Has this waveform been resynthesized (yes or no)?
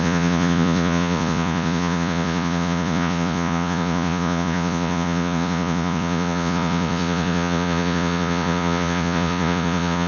yes